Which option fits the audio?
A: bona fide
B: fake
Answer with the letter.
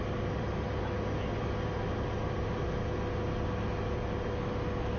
A